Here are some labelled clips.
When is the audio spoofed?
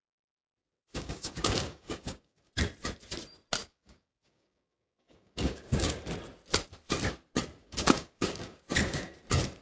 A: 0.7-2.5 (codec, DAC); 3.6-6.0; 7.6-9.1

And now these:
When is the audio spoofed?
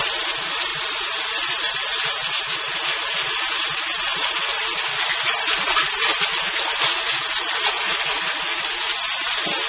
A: 0.7-2.3 (vocoder, BigVGAN v2); 4.1-6.4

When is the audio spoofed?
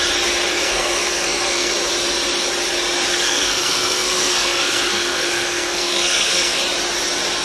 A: 0.5-1.7 (codec, SNAC); 3.1-6.6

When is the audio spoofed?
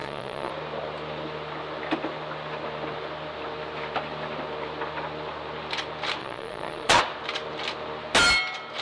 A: 0.0-0.5 (vocoder, Vocos); 6.2-7.0